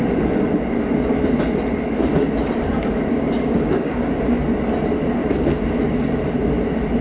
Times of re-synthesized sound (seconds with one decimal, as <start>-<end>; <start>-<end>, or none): 3.1-4.1

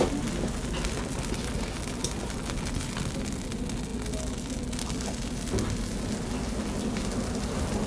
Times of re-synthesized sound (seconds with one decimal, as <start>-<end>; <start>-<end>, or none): none

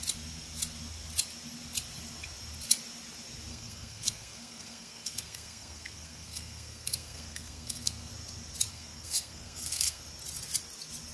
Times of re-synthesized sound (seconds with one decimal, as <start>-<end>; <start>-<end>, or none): 3.5-8.1; 8.7-10.0

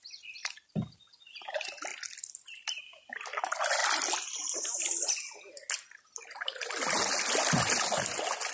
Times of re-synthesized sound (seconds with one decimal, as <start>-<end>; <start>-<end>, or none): none

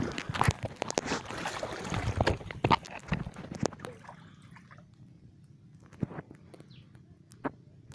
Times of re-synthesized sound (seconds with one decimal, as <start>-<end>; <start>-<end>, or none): none

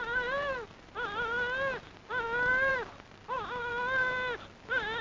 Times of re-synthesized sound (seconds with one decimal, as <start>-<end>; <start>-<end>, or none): none

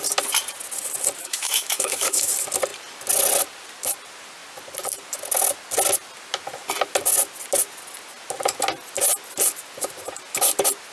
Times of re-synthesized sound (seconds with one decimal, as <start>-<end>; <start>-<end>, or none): 1.2-2.3